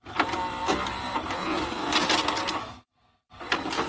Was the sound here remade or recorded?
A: recorded